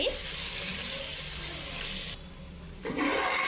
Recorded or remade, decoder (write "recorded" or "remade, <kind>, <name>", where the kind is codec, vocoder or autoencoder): recorded